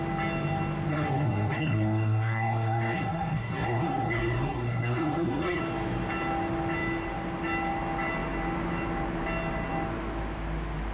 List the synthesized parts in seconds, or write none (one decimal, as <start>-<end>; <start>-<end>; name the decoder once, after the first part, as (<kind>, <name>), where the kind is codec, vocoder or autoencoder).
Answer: 0.9-5.6 (codec, SNAC)